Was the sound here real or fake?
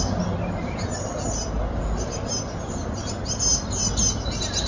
real